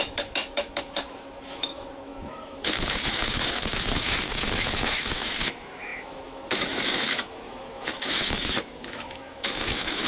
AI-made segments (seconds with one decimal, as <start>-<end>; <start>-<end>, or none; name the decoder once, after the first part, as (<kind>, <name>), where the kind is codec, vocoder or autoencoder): 0.0-10.1 (autoencoder, DAC-VAE)

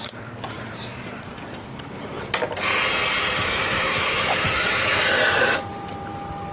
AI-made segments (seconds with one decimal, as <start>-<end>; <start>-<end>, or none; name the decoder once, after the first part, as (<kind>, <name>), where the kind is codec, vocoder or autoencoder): 3.4-5.0 (autoencoder, DAC-VAE)

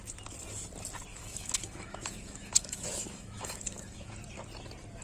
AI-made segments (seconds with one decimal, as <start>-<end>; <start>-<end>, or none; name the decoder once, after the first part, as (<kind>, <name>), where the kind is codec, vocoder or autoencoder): 1.1-4.1 (autoencoder, DAC-VAE)

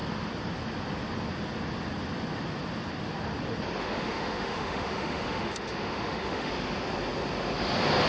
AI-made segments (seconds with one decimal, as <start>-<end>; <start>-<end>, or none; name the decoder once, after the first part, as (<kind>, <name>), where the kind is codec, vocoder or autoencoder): 3.8-6.5 (autoencoder, DAC-VAE)

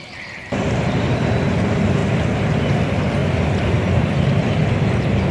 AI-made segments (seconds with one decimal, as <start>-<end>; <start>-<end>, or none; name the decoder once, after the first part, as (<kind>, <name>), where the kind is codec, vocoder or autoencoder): none